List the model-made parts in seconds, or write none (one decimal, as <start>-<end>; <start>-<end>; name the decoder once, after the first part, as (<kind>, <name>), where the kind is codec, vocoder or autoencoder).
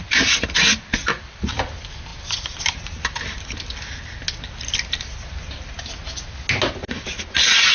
none